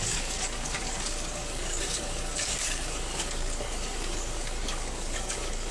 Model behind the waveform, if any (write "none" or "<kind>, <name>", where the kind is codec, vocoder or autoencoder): codec, DAC